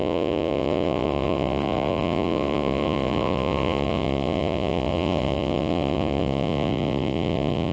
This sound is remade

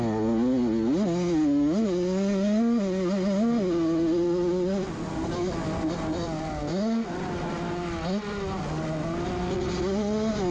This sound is recorded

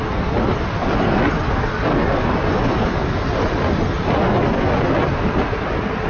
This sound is recorded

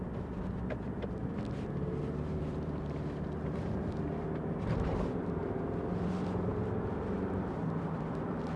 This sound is remade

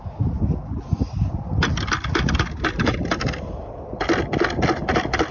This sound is recorded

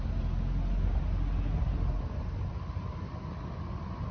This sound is recorded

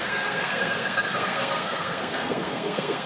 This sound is remade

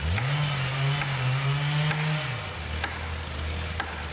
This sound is recorded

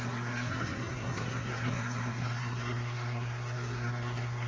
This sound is remade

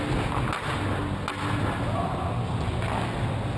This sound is recorded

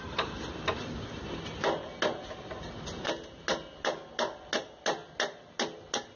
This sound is recorded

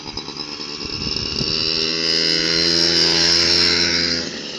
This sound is recorded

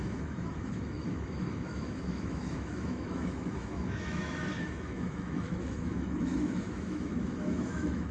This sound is remade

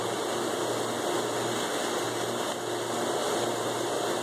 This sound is recorded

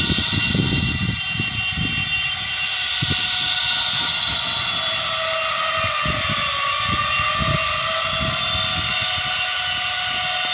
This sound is recorded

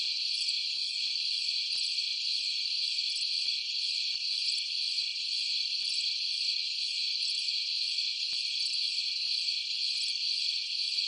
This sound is recorded